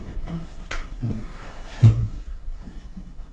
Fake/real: fake